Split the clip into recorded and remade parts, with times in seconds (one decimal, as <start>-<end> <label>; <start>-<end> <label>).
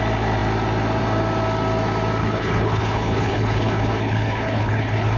0.0-2.2 recorded; 2.2-5.2 remade